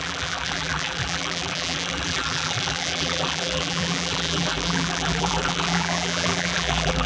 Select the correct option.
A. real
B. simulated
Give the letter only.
B